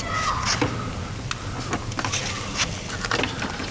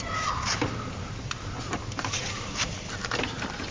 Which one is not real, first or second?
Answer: second